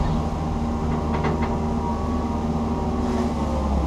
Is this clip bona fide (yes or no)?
yes